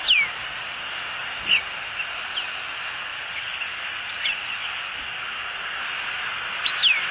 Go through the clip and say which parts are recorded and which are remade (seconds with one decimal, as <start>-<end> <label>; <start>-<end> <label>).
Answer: 0.0-0.4 recorded; 0.4-1.3 remade; 1.3-3.1 recorded; 3.1-5.2 remade; 5.2-7.1 recorded